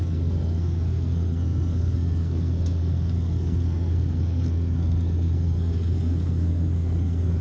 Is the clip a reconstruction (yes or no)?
yes